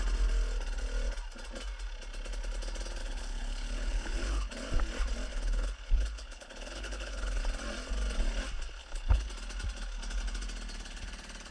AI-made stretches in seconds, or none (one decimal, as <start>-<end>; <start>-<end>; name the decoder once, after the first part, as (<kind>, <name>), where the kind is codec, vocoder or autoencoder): 3.0-4.7 (codec, HILCodec); 5.3-7.4; 8.8-9.3